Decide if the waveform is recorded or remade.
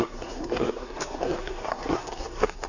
remade